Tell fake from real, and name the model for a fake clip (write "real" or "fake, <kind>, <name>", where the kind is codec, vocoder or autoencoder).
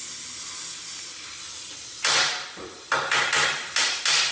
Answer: real